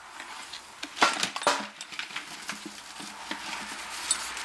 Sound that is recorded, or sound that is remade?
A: recorded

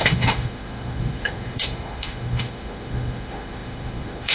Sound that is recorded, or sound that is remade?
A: remade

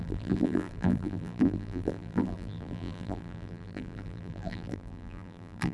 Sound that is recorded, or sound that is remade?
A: remade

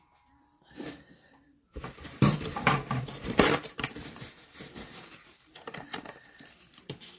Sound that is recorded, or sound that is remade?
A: remade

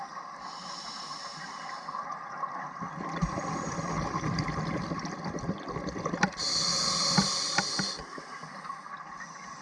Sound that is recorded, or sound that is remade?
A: recorded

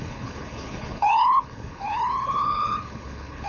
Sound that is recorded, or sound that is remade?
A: remade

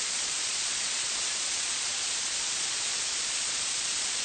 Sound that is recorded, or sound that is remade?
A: remade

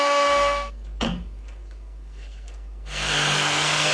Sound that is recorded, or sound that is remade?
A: remade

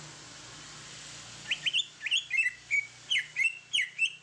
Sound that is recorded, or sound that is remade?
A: recorded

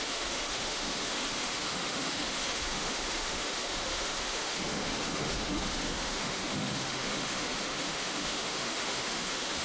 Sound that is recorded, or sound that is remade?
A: remade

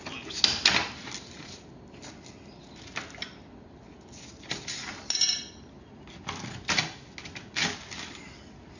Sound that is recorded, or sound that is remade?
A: recorded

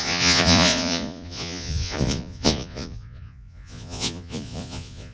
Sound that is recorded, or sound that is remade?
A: remade